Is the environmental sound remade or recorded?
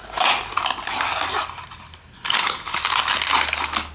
recorded